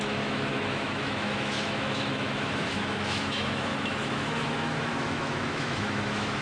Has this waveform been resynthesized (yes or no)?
yes